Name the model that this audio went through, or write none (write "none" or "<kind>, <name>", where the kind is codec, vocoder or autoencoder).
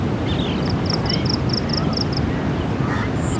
none